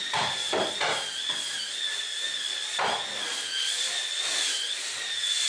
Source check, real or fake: real